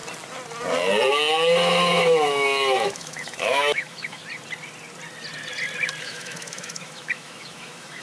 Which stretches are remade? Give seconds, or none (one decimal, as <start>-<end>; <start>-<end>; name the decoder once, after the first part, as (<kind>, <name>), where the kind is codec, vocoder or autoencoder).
1.1-4.2 (autoencoder, DAC-VAE); 6.0-8.0